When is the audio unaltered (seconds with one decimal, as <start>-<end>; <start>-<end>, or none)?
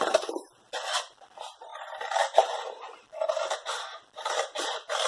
0.0-5.1